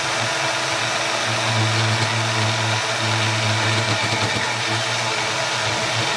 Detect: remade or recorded recorded